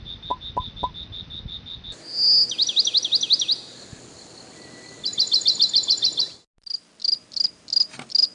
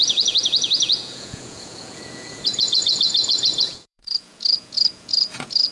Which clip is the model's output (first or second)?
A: second